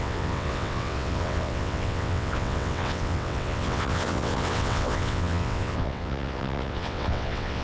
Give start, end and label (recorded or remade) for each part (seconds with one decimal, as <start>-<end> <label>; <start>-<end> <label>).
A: 0.0-7.6 remade